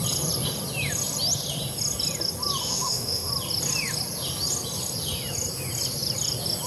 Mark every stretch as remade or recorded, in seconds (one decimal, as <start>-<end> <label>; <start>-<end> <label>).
0.0-2.6 recorded; 2.6-3.3 remade; 3.3-6.7 recorded